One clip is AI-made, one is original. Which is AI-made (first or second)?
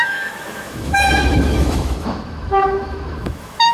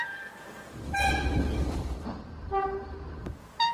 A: first